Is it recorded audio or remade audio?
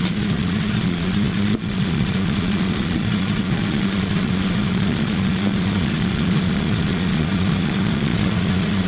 remade